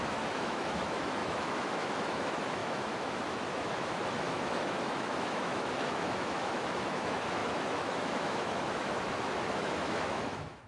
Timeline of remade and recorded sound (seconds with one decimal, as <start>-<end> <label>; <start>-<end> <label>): 0.0-10.7 remade